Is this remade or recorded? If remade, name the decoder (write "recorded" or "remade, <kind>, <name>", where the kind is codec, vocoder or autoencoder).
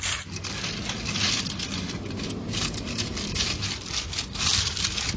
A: recorded